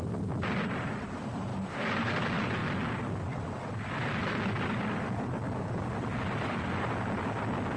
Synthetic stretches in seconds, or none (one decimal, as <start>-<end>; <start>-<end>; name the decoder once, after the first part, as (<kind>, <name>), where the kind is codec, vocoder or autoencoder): 2.6-6.8 (vocoder, BigVGAN v2)